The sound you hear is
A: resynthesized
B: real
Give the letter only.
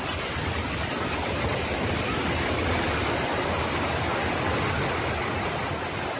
B